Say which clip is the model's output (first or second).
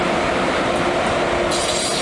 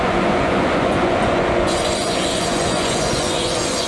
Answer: second